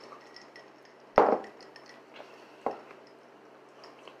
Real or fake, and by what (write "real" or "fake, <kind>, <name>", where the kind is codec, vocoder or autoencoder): real